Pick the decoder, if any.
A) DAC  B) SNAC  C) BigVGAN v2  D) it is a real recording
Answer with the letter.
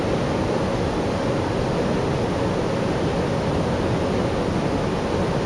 D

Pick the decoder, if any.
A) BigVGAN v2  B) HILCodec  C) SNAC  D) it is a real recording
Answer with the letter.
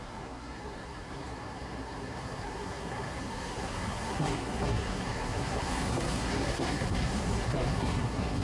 C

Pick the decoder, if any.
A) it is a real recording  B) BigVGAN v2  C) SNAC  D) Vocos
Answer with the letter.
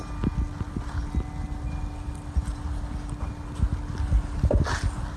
A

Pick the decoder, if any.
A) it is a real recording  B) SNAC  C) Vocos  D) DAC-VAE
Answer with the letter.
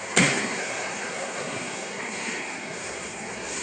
B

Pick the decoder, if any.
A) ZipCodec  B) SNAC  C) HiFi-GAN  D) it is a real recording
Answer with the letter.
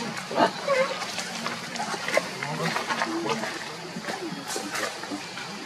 D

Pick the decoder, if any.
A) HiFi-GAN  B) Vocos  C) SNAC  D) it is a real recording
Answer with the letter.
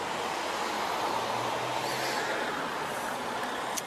D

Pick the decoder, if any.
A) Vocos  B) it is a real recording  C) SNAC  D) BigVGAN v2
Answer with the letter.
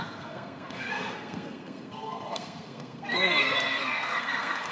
C